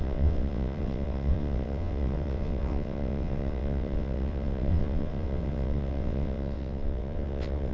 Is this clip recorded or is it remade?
remade